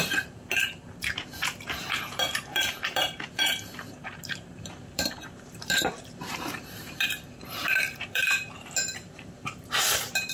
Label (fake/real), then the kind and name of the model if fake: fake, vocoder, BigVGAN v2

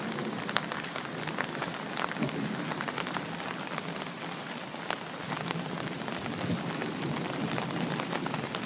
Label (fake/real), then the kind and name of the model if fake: fake, vocoder, BigVGAN v2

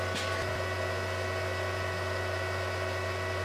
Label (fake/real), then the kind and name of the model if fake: real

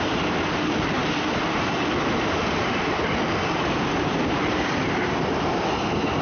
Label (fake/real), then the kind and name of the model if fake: fake, vocoder, BigVGAN v2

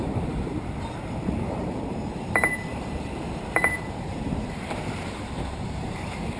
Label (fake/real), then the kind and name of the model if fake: fake, vocoder, BigVGAN v2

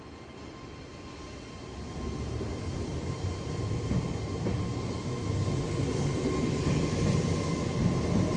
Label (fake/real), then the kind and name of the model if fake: real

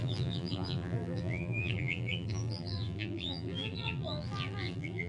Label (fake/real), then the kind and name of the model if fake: fake, vocoder, BigVGAN v2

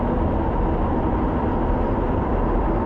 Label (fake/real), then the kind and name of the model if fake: real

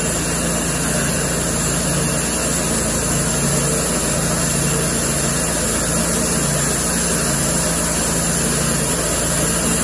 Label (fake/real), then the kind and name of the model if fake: real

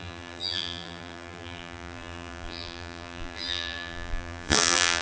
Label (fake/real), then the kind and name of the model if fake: fake, vocoder, BigVGAN v2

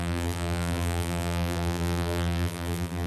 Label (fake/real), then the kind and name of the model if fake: fake, vocoder, BigVGAN v2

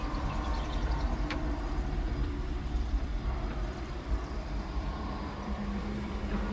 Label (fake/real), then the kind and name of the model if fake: fake, vocoder, BigVGAN v2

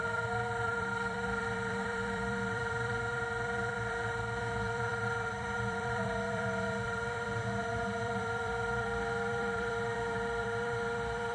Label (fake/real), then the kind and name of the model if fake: fake, vocoder, BigVGAN v2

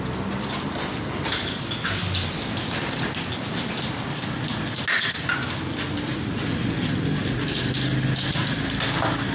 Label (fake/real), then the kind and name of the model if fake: real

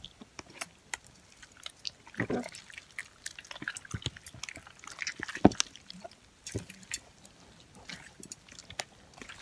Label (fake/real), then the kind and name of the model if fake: real